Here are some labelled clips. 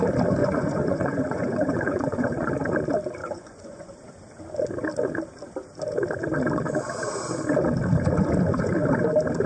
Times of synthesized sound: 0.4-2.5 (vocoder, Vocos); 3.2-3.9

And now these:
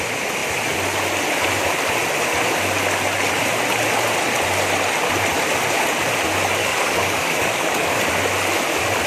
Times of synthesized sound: 6.6-8.0 (codec, DAC)